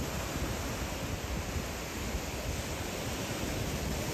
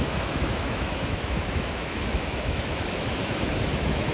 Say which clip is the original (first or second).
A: first